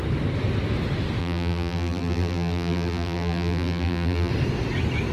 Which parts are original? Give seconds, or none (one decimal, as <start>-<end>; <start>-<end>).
0.0-1.2; 4.3-5.1